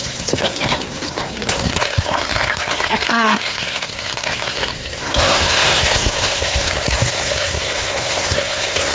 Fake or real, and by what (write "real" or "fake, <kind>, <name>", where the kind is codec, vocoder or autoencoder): fake, codec, SNAC